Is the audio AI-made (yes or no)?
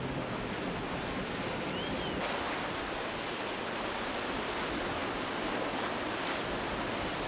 no